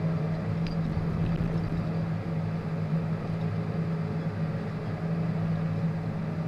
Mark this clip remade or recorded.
recorded